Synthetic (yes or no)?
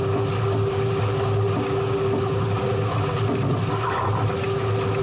no